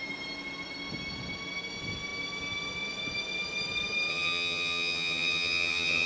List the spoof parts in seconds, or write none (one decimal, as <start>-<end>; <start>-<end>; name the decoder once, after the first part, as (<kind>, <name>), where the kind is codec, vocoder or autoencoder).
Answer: 4.1-6.1 (vocoder, HiFi-GAN)